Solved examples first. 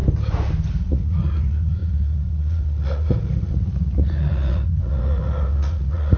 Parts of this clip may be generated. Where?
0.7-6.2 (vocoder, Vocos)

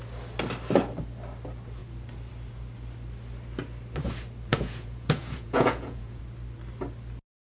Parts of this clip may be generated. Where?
4.5-6.2 (vocoder, Vocos)

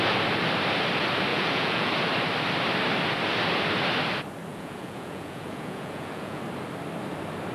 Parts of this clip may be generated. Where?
1.3-1.9 (vocoder, Vocos); 4.5-6.4

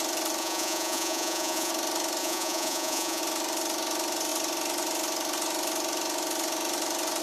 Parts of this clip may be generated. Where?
0.4-1.7 (vocoder, Vocos); 2.2-3.2

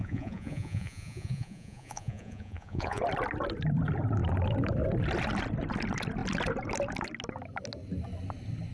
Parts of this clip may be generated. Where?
0.0-3.0 (vocoder, Vocos)